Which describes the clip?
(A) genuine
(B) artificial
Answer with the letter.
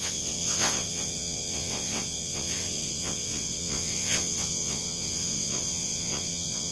B